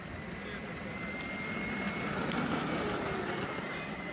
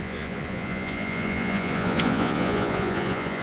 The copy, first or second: second